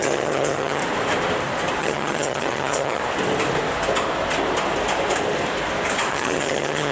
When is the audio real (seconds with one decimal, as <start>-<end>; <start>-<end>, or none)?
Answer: 0.8-1.8; 3.0-6.1